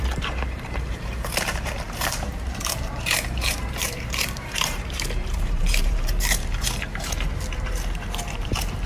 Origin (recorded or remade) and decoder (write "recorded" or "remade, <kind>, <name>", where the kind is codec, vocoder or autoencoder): remade, vocoder, BigVGAN v2